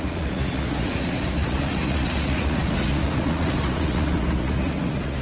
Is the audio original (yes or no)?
no